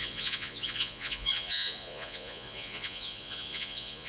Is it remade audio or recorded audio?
remade